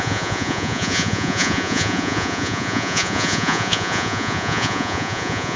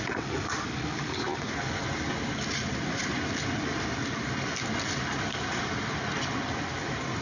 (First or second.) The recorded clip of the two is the second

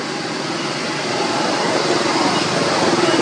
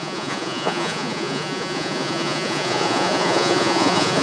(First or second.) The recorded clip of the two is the first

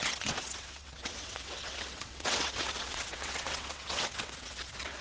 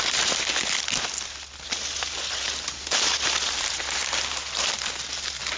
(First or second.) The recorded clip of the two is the second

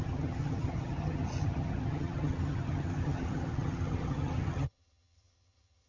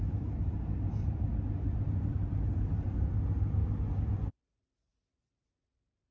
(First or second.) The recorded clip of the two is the second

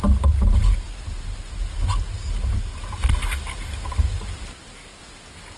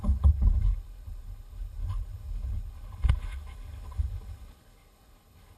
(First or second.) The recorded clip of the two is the first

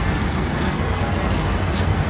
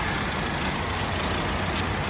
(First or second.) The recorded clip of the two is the second